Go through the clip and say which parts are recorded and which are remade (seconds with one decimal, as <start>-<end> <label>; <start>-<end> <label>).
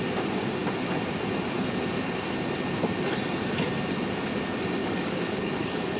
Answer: 0.0-4.8 recorded; 4.8-6.0 remade